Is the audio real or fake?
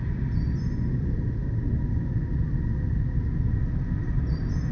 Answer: real